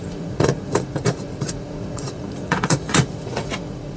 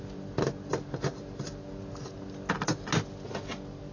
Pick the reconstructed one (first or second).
first